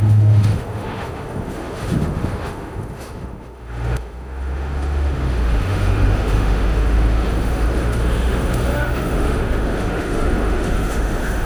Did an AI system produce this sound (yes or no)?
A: yes